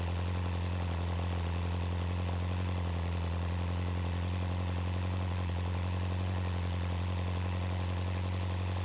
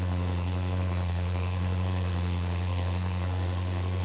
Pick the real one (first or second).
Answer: first